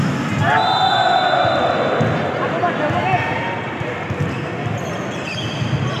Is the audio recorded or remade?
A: recorded